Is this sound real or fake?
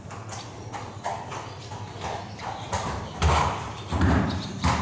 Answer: fake